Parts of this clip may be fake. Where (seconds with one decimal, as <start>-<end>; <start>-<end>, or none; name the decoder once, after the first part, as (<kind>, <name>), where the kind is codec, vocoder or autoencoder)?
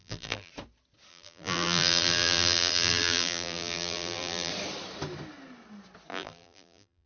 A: 0.0-0.5 (vocoder, BigVGAN v2); 1.1-4.5; 6.1-7.1